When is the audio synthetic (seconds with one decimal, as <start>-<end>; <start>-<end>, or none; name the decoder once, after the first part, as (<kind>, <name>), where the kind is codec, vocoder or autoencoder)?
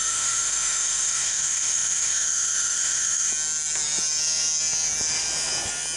0.0-3.3 (autoencoder, DAC-VAE)